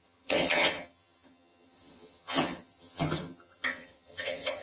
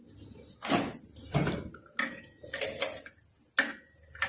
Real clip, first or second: second